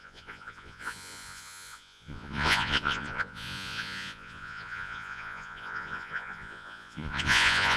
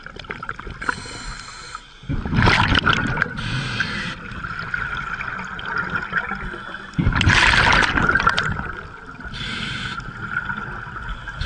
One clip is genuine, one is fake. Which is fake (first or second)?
first